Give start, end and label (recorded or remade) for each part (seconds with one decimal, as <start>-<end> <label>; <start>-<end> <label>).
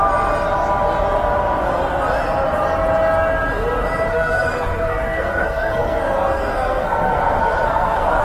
0.0-4.1 recorded; 4.1-8.2 remade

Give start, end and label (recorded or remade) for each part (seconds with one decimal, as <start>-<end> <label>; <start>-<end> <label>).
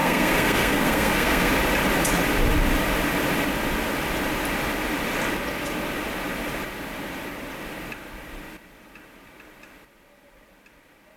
0.0-1.5 remade; 1.5-11.2 recorded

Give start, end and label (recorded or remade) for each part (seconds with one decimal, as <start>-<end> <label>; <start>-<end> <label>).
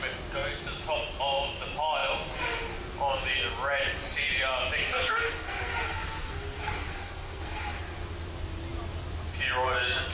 0.0-4.8 recorded; 4.8-7.8 remade; 7.8-10.1 recorded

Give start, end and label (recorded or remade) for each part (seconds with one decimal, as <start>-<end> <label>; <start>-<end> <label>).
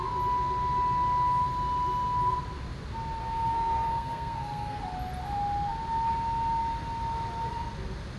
0.0-3.2 recorded; 3.2-4.8 remade; 4.8-8.2 recorded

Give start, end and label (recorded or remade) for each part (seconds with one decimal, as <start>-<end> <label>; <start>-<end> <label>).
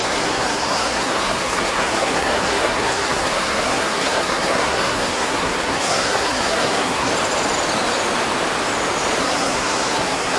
0.0-7.1 remade; 7.1-9.2 recorded; 9.2-10.4 remade